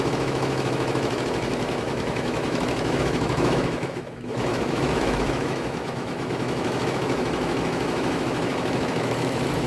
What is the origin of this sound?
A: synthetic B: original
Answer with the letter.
A